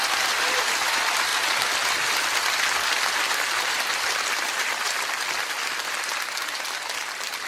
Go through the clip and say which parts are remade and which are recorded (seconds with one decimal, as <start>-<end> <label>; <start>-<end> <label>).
0.0-7.5 recorded